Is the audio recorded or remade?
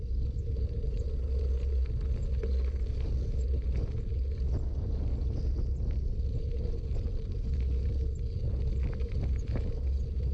recorded